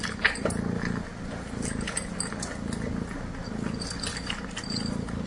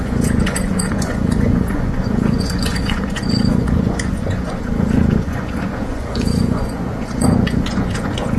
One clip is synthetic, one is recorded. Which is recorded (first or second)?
first